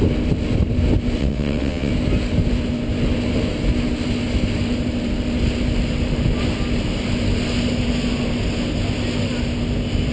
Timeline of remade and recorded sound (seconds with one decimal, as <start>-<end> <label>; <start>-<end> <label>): 0.0-1.2 recorded; 1.2-1.9 remade; 1.9-10.1 recorded